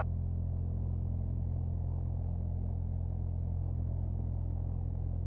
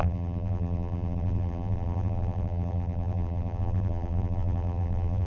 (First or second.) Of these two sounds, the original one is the first